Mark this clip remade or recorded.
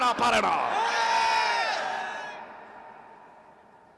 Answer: recorded